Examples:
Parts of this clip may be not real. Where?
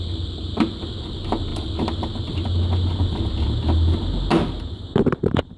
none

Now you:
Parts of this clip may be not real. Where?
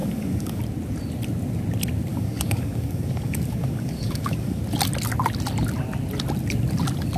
0.0-0.6 (codec, DAC); 2.1-4.6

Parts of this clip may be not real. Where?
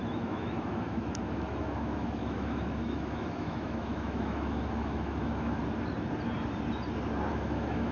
0.0-5.6 (autoencoder, DAC-VAE); 7.3-7.9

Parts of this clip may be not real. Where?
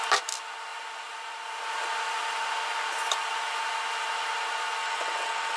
4.8-5.6 (vocoder, WaveNeXt)